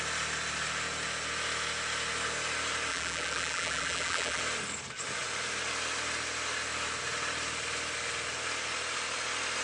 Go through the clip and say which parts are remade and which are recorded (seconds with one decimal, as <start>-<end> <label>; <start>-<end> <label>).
0.0-2.9 recorded; 2.9-4.4 remade; 4.4-9.6 recorded